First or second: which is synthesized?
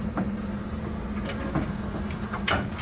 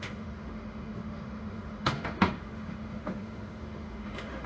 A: second